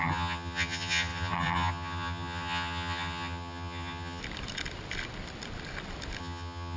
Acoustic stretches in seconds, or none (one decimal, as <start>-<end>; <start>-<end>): 4.2-6.2